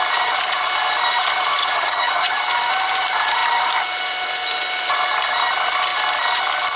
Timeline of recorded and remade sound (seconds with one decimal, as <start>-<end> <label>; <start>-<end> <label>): 0.0-1.6 recorded; 1.6-2.4 remade; 2.4-6.8 recorded